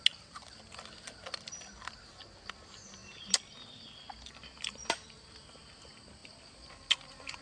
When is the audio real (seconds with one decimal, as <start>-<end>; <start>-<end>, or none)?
0.0-7.4